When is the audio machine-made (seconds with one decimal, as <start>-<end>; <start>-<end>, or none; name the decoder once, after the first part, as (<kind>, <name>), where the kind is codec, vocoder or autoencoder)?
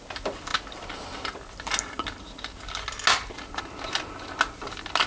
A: none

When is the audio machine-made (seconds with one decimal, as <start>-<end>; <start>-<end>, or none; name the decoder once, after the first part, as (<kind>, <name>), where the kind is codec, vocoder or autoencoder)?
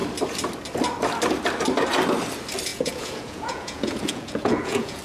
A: 2.7-5.0 (vocoder, Vocos)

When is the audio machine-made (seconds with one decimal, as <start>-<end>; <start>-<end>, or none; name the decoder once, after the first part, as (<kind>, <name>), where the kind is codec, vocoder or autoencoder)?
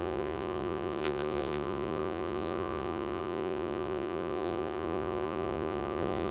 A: 0.0-6.3 (vocoder, Vocos)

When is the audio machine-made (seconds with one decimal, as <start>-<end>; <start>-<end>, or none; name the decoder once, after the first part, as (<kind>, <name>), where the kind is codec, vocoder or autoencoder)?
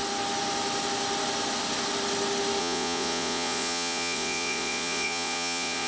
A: 2.6-5.9 (vocoder, Vocos)